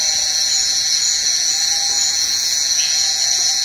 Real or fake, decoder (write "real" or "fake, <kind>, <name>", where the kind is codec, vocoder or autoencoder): fake, vocoder, Vocos